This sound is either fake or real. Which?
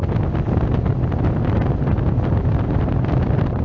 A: real